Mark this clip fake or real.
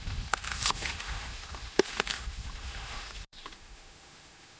fake